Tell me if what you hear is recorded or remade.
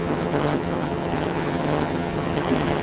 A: remade